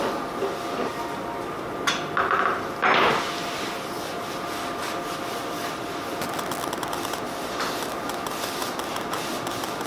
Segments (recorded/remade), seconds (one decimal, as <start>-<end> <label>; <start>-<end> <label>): 0.0-9.9 recorded